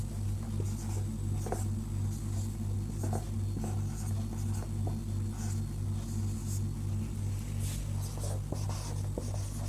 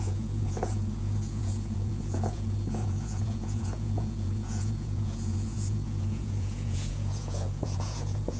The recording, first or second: first